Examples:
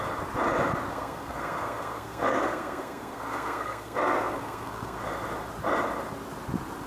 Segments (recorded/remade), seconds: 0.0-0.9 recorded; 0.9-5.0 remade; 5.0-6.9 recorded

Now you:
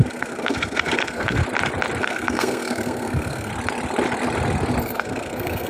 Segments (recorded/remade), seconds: 0.0-1.4 remade; 1.4-2.0 recorded; 2.0-3.5 remade; 3.5-4.8 recorded; 4.8-5.7 remade

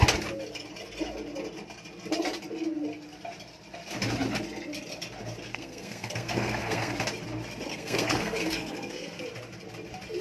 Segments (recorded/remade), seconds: 0.0-5.5 recorded; 5.5-6.9 remade; 6.9-7.7 recorded; 7.7-9.2 remade; 9.2-10.2 recorded

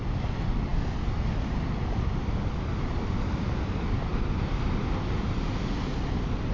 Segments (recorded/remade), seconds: 0.0-6.5 recorded

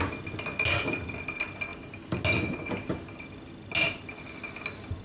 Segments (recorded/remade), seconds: 0.0-5.0 recorded

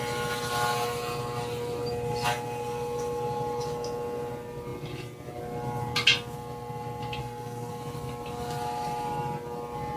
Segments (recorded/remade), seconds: 0.0-7.2 recorded; 7.2-7.7 remade; 7.7-10.0 recorded